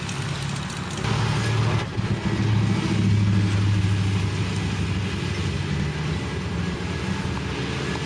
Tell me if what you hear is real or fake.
real